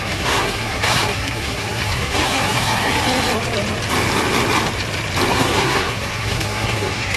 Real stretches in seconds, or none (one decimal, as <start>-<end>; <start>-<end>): 2.9-5.3